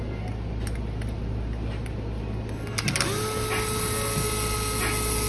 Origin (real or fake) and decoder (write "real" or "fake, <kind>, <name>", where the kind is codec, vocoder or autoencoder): real